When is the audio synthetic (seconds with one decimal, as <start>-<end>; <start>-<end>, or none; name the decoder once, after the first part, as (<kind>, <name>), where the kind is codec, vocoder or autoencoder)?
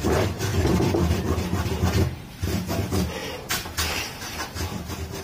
0.0-3.2 (vocoder, BigVGAN v2); 4.3-5.2